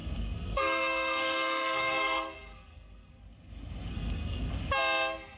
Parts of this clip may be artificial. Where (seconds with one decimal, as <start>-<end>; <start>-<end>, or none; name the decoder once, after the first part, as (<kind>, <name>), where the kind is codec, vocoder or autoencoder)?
0.0-3.2 (codec, SNAC); 3.9-4.5